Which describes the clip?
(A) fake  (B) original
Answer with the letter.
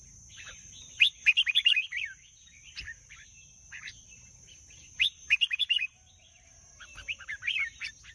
A